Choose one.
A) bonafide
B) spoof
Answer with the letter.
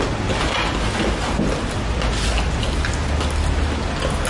A